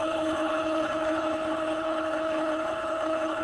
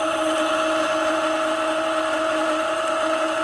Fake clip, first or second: first